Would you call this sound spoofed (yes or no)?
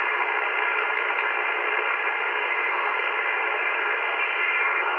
no